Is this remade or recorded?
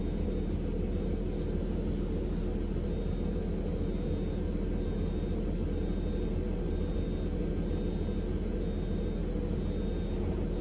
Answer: recorded